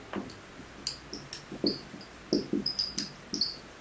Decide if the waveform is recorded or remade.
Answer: recorded